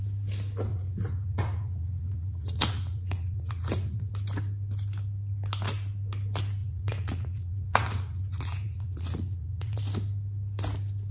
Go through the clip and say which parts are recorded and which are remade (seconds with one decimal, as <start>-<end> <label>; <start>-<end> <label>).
0.0-0.7 recorded; 0.7-4.1 remade; 4.1-6.6 recorded; 6.6-9.8 remade; 9.8-11.1 recorded